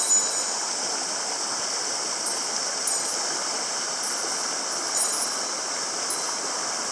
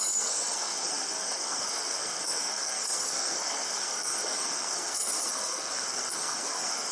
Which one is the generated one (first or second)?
second